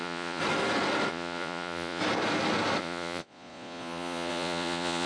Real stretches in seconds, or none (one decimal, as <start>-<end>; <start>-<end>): 0.4-1.1; 2.0-2.8